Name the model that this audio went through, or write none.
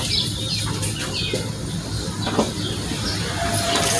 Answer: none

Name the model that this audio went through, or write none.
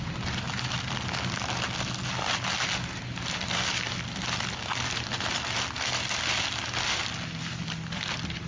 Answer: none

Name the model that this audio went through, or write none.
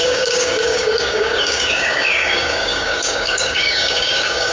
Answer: codec, DAC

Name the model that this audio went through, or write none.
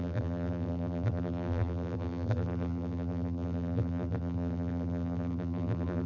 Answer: vocoder, BigVGAN v2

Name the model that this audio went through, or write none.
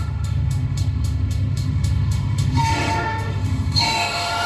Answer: autoencoder, DAC-VAE